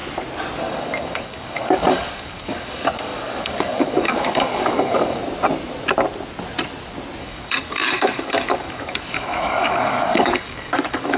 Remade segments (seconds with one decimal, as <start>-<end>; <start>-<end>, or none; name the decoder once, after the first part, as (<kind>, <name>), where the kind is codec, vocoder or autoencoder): 0.6-5.2 (codec, DAC); 7.2-11.2